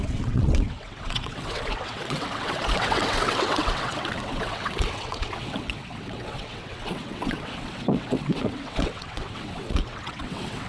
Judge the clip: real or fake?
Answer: fake